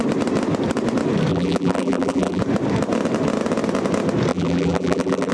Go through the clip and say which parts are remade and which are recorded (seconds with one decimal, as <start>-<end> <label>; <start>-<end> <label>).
0.0-1.3 recorded; 1.3-2.4 remade; 2.4-4.3 recorded; 4.3-5.3 remade